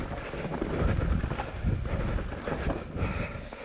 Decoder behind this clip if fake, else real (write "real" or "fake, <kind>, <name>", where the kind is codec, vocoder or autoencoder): real